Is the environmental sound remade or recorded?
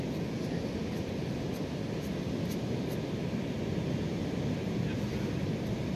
recorded